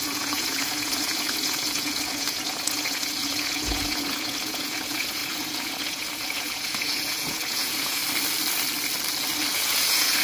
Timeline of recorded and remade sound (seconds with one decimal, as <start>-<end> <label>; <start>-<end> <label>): 0.0-8.0 remade; 8.0-9.5 recorded; 9.5-10.2 remade